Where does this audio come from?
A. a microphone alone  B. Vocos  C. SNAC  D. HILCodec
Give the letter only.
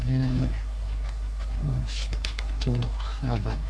C